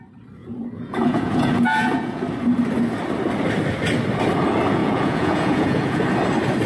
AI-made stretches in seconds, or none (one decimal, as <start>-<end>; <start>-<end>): 0.4-2.2; 4.8-6.0